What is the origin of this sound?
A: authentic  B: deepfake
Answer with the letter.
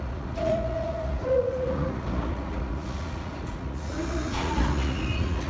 B